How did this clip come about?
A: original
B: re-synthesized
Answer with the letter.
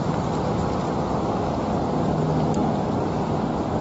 A